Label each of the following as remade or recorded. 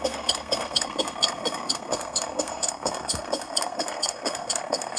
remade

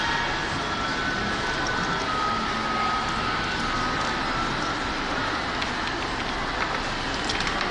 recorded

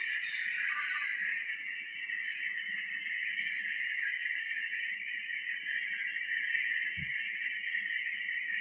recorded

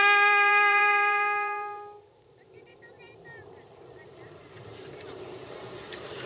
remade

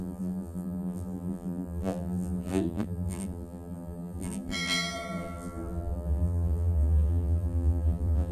remade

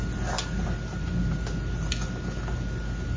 recorded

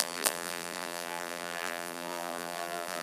remade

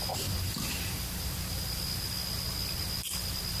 recorded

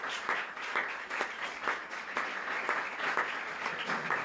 recorded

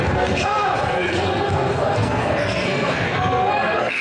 remade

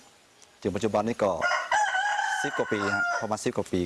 recorded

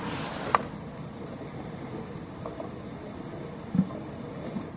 recorded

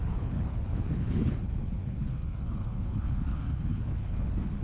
remade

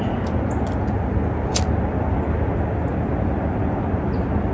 recorded